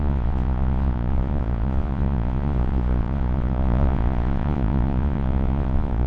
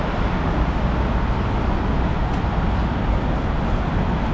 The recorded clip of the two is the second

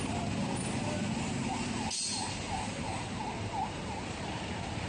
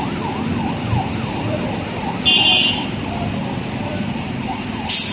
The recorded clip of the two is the first